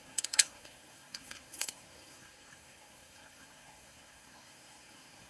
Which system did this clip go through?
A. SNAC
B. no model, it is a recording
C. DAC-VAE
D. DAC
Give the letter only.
A